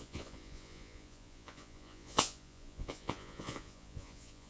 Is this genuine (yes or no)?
no